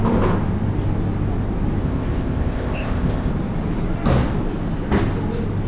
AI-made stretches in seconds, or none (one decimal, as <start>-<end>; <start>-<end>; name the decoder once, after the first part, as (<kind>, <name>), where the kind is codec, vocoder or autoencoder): 1.8-3.3 (codec, ZipCodec)